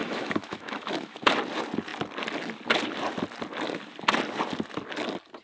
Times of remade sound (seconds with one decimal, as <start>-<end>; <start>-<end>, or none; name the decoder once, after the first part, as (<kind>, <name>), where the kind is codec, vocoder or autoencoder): 0.0-1.3 (autoencoder, DAC-VAE)